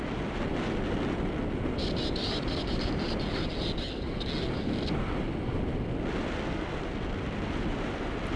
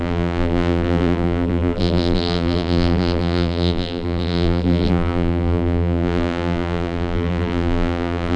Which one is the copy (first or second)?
second